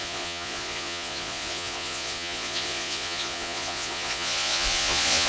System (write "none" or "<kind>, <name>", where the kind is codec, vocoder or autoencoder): vocoder, Vocos